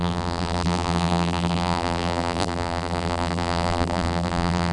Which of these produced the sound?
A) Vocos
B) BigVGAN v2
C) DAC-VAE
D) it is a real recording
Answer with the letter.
B